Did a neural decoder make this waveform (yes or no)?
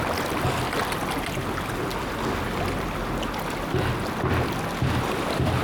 no